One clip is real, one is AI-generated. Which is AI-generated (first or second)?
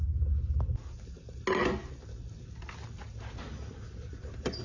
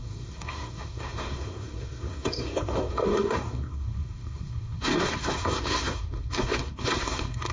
second